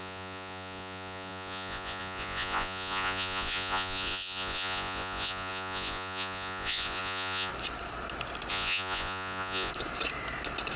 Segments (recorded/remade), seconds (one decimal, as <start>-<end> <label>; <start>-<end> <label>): 0.0-7.5 remade; 7.5-8.5 recorded; 8.5-9.7 remade; 9.7-10.8 recorded